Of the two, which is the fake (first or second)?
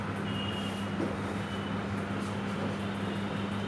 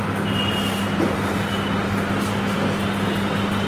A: second